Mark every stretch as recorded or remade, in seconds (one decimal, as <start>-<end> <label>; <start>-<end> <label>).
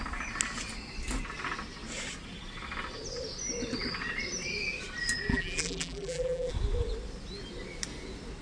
0.0-5.3 recorded; 5.3-6.5 remade; 6.5-8.4 recorded